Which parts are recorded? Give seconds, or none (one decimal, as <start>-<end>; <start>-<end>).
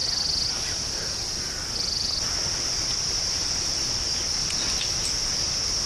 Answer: 0.0-5.9